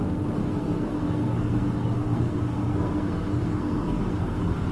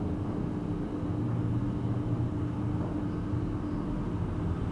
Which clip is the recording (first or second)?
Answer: second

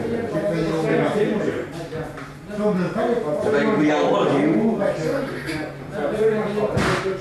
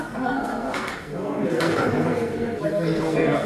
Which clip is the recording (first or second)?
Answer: first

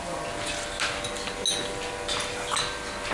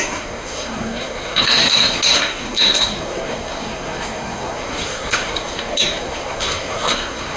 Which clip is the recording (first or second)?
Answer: first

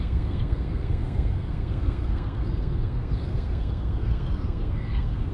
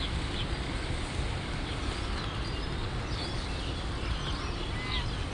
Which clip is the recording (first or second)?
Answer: second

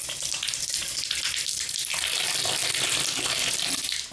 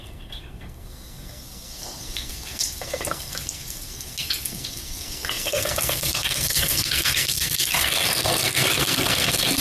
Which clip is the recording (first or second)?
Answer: first